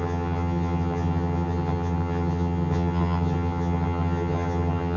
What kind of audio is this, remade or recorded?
remade